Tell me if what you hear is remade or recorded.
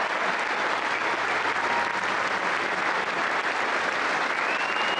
recorded